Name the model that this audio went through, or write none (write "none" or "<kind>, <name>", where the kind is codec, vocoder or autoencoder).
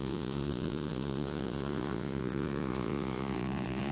vocoder, Vocos